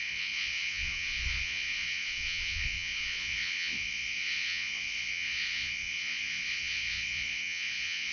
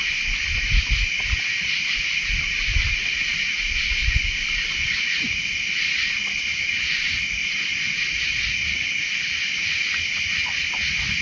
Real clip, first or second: second